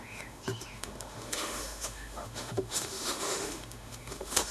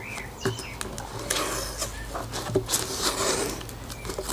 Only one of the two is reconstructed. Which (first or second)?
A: first